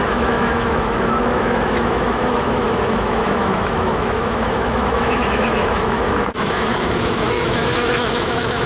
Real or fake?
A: fake